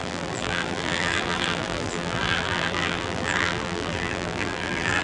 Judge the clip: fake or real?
fake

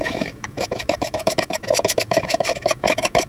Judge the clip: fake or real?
fake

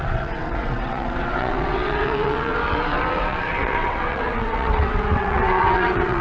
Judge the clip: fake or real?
fake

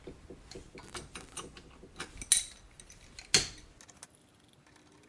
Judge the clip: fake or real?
real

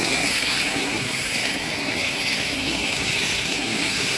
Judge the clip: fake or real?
fake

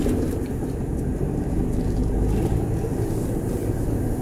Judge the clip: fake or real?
real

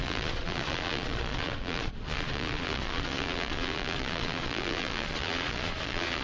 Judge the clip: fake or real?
fake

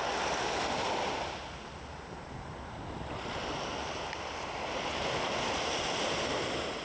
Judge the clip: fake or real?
real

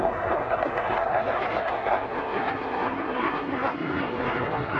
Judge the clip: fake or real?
fake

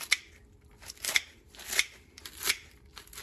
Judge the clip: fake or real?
real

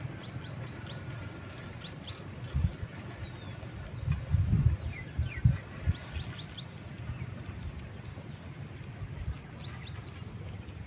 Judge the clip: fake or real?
real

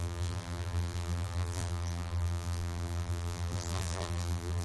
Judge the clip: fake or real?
fake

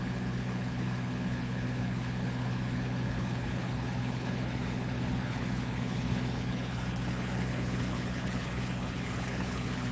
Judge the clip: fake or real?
fake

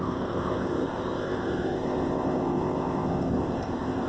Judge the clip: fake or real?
fake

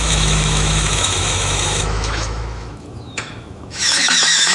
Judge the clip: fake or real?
fake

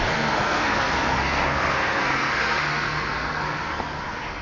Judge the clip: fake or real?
fake